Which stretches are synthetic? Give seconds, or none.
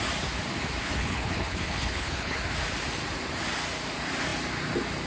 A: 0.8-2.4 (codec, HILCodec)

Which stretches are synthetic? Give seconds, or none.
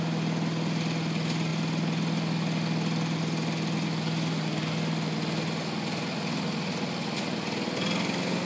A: none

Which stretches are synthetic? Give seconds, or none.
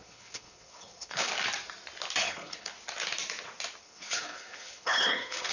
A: 0.0-1.3 (codec, HILCodec); 2.2-2.7; 3.8-5.5